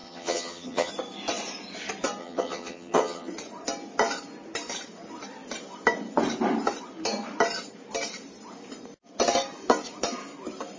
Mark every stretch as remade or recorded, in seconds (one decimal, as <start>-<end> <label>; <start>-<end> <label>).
0.0-0.9 remade; 0.9-2.2 recorded; 2.2-3.3 remade; 3.3-10.8 recorded